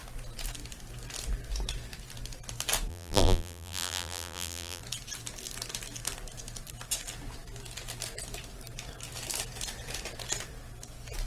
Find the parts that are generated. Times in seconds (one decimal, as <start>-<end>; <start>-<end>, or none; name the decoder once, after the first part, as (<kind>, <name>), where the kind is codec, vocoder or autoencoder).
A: 2.9-4.8 (vocoder, BigVGAN v2)